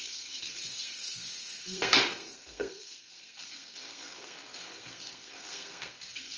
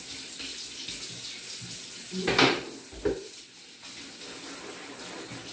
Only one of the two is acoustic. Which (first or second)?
second